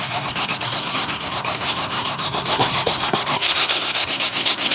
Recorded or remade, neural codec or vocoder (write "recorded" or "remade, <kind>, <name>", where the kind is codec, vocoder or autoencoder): remade, codec, SNAC